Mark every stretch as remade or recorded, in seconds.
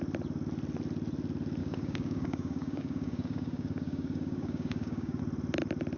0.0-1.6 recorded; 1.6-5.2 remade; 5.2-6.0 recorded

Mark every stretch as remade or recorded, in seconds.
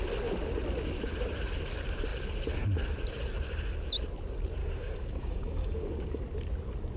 0.0-4.6 recorded; 4.6-6.2 remade; 6.2-7.0 recorded